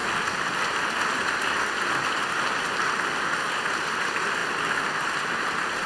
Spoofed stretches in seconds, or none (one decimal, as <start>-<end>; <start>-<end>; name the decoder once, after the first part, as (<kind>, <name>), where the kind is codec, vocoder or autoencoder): none